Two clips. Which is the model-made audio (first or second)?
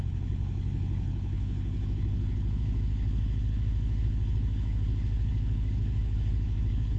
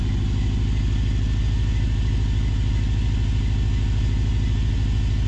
first